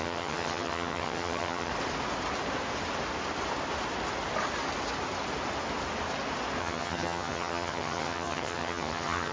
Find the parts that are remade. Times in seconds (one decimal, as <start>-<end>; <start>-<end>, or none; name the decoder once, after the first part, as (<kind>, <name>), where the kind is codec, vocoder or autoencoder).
0.0-1.7 (vocoder, HiFi-GAN); 6.6-9.3